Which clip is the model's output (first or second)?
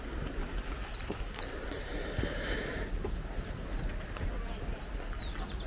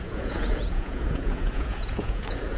second